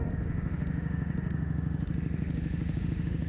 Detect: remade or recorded remade